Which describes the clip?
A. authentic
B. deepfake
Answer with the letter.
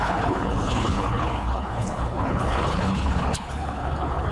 B